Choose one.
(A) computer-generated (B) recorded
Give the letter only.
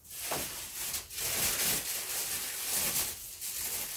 B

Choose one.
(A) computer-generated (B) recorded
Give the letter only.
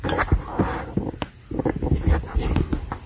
B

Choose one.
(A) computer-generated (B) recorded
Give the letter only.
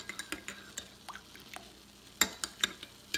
B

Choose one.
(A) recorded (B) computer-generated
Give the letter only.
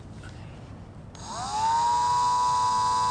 A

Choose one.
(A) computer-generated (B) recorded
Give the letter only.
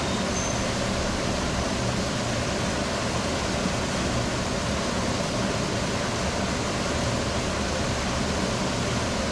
B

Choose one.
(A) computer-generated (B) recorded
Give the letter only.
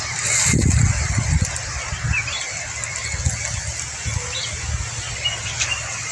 B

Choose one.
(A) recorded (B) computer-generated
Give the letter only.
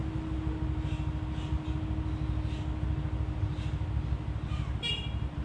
A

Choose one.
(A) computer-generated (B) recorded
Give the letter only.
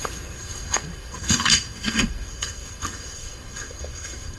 A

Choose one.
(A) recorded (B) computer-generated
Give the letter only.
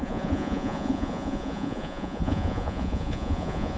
B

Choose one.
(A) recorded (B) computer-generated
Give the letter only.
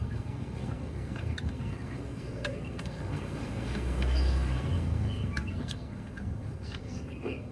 B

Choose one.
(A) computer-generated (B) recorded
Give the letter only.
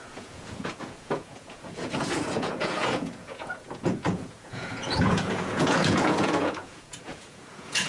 A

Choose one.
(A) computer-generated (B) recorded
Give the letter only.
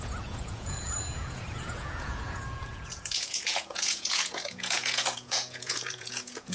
A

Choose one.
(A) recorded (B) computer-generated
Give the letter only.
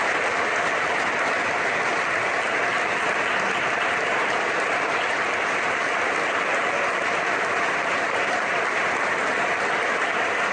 A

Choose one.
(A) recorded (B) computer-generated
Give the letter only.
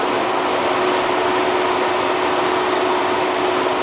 A